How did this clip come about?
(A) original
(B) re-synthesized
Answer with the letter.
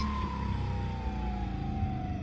A